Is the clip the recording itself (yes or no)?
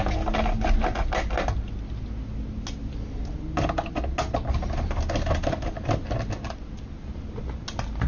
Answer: yes